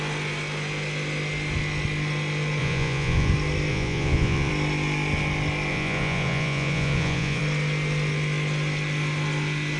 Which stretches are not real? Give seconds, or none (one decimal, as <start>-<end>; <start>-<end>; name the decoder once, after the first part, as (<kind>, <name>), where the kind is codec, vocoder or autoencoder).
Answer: 2.6-3.3 (vocoder, Vocos); 3.7-4.5; 5.7-7.4